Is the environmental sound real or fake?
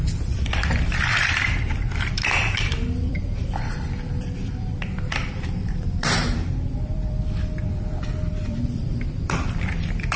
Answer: fake